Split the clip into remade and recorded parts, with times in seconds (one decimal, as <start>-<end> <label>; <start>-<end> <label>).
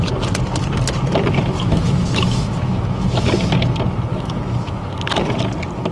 0.0-1.7 recorded; 1.7-3.3 remade; 3.3-4.1 recorded; 4.1-4.9 remade; 4.9-5.9 recorded